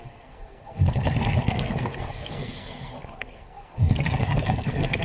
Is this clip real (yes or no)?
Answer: no